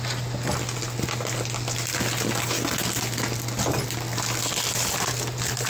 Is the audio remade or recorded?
recorded